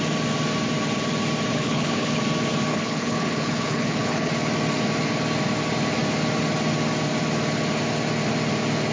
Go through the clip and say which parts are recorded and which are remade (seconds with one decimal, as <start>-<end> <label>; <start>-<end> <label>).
0.0-1.5 recorded; 1.5-2.2 remade; 2.2-2.7 recorded; 2.7-4.3 remade; 4.3-8.9 recorded